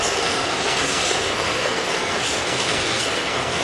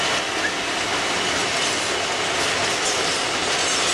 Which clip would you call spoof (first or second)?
first